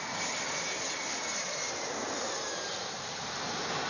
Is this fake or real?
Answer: real